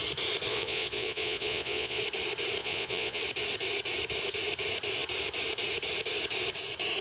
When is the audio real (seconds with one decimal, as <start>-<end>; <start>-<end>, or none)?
0.0-0.5; 2.0-2.6; 3.2-7.0